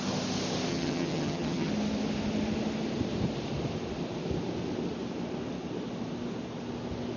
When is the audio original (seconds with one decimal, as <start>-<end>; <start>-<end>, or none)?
0.0-0.7; 1.7-7.2